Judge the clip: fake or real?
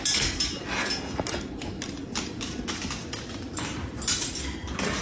real